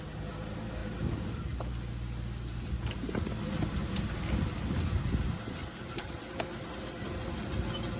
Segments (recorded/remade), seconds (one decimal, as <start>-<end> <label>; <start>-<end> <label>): 0.0-5.6 recorded; 5.6-6.1 remade; 6.1-8.0 recorded